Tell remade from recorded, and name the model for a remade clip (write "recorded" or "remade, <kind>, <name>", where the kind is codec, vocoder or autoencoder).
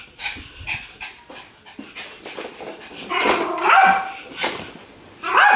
recorded